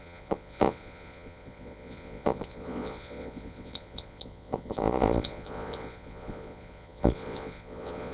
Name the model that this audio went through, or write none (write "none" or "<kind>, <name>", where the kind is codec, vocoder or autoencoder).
vocoder, Vocos